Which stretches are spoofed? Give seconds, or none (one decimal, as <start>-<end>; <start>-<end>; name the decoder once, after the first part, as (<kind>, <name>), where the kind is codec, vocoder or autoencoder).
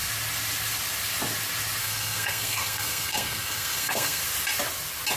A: 1.8-4.2 (codec, SNAC)